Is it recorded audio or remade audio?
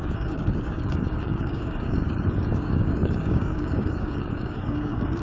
remade